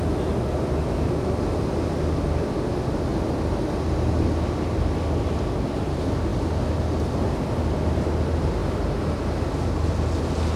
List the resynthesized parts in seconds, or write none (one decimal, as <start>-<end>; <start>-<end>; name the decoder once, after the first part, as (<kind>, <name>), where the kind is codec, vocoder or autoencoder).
3.1-3.8 (vocoder, BigVGAN v2)